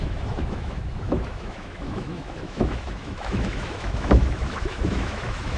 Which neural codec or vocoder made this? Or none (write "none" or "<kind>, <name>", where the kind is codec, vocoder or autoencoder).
autoencoder, DAC-VAE